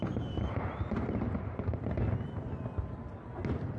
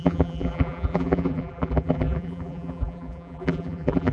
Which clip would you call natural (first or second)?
first